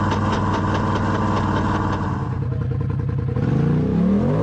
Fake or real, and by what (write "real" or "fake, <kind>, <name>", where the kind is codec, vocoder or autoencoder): real